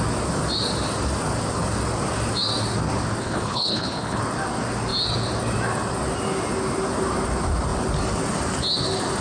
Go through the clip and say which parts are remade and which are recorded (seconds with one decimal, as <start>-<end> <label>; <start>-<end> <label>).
0.0-3.2 recorded; 3.2-4.2 remade; 4.2-9.2 recorded